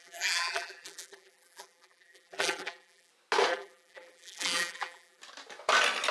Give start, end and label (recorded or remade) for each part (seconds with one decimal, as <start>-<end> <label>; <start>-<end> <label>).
0.0-3.1 remade; 3.1-3.5 recorded; 3.5-5.2 remade; 5.2-6.1 recorded